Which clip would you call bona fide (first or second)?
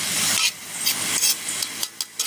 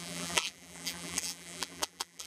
first